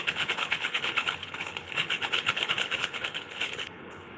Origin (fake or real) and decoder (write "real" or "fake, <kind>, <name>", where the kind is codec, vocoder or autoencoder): fake, codec, HILCodec